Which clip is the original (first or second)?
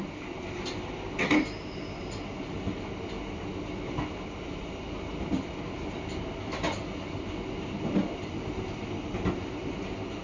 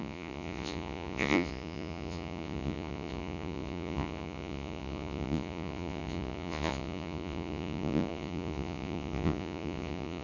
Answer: first